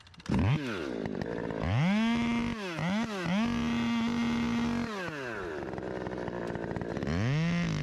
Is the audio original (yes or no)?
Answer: yes